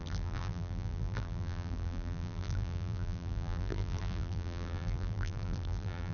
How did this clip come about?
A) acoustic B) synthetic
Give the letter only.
B